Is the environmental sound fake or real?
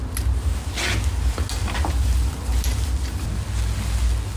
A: real